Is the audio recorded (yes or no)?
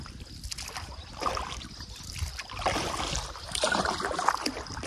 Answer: yes